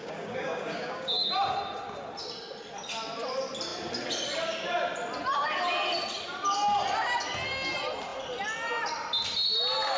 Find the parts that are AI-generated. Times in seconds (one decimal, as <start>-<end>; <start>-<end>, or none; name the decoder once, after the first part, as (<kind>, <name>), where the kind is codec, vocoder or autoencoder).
0.0-1.3 (codec, DAC)